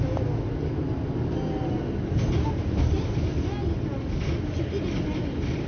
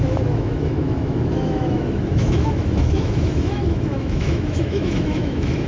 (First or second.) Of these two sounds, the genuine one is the first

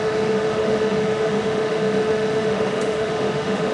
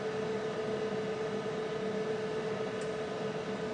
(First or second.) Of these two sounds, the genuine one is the second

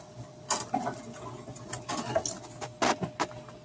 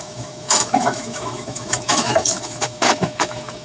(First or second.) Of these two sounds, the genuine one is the first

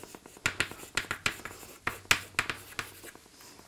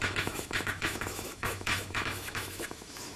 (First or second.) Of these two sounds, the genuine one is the first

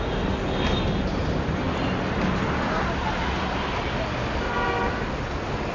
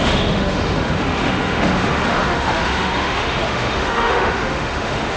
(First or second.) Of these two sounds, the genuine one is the first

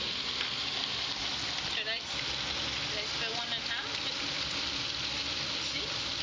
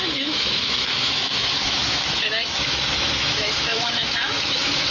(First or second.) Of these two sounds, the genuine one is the first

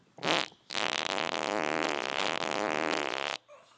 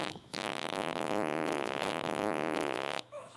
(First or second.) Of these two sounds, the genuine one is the first